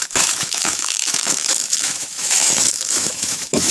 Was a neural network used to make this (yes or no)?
yes